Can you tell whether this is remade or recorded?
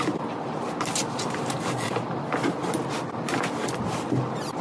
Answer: recorded